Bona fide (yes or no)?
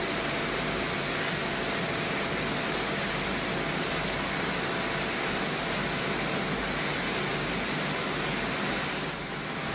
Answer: yes